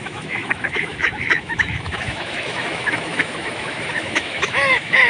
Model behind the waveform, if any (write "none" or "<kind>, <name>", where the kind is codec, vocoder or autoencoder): autoencoder, DAC-VAE